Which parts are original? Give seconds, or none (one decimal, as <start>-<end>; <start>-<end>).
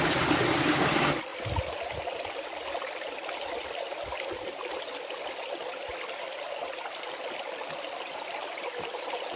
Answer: 0.0-9.4